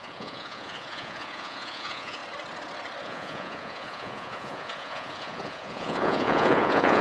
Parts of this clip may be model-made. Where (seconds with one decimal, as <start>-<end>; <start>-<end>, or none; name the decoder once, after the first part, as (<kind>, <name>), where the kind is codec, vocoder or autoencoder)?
0.0-2.2 (vocoder, Vocos); 3.0-7.0